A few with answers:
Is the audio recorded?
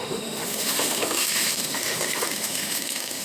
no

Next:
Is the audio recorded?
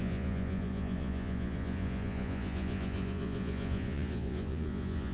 no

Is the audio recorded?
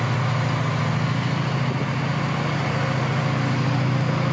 yes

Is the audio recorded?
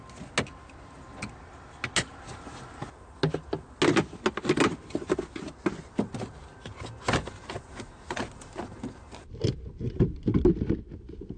yes